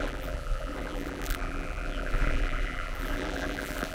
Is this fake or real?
fake